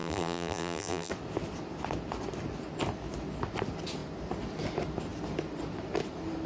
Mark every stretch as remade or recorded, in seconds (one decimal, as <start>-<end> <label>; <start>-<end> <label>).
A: 0.0-1.1 remade; 1.1-6.5 recorded